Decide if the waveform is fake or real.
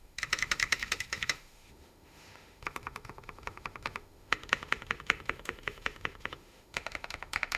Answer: fake